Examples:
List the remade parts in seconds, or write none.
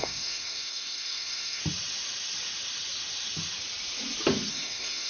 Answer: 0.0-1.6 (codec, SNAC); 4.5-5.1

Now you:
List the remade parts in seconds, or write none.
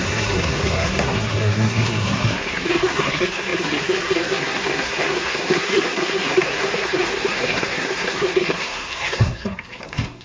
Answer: 0.0-10.2 (codec, SNAC)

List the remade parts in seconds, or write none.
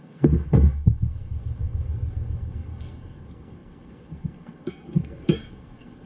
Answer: 0.0-6.1 (codec, SNAC)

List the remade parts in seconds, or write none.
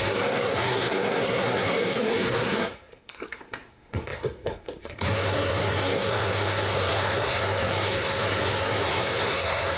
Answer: 0.0-9.8 (codec, SNAC)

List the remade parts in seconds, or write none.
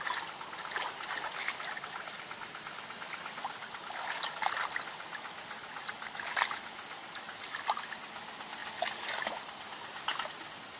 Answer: none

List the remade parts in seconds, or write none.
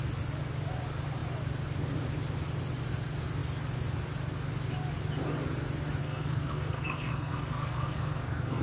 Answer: 6.0-8.6 (codec, SNAC)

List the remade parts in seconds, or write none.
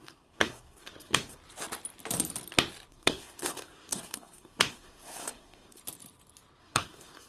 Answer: 0.0-1.4 (codec, SNAC); 2.9-5.8; 6.6-7.3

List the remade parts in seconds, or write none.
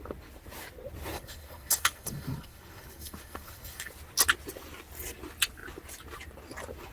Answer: 1.1-3.9 (codec, SNAC)